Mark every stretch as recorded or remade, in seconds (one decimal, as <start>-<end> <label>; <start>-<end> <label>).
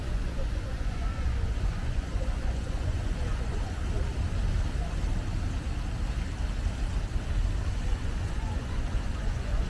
0.0-3.8 remade; 3.8-7.7 recorded; 7.7-9.7 remade